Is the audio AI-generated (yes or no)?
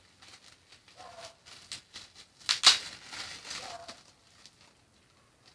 no